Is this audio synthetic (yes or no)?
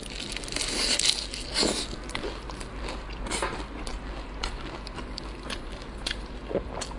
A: no